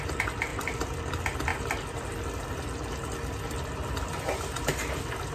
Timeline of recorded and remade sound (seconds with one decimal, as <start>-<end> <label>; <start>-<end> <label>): 0.0-5.3 recorded